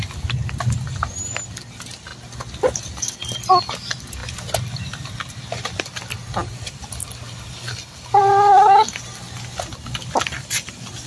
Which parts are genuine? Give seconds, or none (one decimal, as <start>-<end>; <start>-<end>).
0.0-11.1